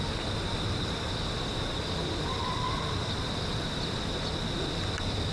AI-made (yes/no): no